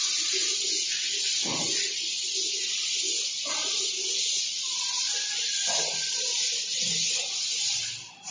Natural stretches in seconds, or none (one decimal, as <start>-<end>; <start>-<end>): 0.0-8.3